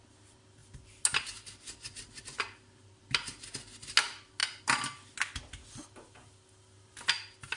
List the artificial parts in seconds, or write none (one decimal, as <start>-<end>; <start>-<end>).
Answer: none